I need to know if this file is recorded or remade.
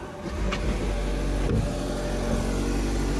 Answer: recorded